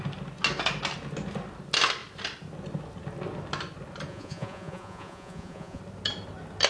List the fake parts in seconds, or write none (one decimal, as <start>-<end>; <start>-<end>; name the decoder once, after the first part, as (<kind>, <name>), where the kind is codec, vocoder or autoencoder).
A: 4.1-5.8 (vocoder, Vocos)